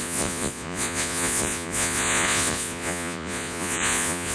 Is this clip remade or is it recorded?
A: remade